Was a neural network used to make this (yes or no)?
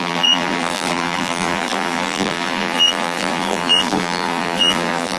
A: yes